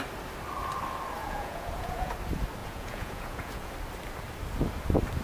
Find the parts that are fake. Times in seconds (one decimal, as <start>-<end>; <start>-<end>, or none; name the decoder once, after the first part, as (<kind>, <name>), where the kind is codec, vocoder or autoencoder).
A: 1.2-2.1 (vocoder, Vocos); 2.6-3.7